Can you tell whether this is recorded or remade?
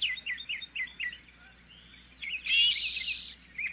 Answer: recorded